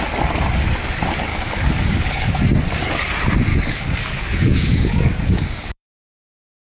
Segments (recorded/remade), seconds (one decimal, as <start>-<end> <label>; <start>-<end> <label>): 0.0-1.3 recorded; 1.3-2.4 remade; 2.4-3.5 recorded; 3.5-6.1 remade; 6.1-6.8 recorded